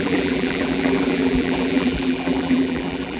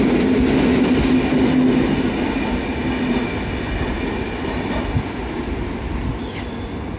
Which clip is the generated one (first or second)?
first